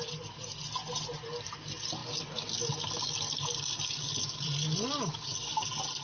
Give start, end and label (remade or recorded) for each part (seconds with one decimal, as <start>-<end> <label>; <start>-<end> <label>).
0.0-6.0 recorded